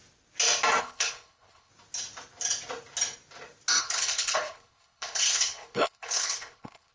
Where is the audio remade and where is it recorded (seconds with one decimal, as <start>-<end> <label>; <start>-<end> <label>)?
0.0-0.8 recorded; 0.8-1.7 remade; 1.7-3.8 recorded; 3.8-6.9 remade